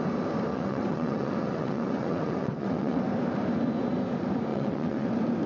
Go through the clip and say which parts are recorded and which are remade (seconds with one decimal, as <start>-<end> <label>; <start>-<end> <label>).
0.0-0.5 recorded; 0.5-3.0 remade; 3.0-4.5 recorded; 4.5-5.1 remade; 5.1-5.5 recorded